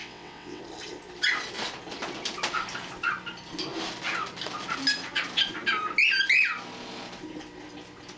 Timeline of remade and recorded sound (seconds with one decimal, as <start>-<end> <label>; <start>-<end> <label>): 0.0-0.6 remade; 0.6-8.2 recorded